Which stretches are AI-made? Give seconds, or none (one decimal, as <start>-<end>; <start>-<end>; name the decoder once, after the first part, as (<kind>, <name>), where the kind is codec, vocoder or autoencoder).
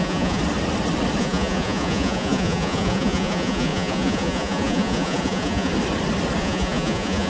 0.0-0.4 (vocoder, Vocos); 1.2-5.7; 6.4-7.3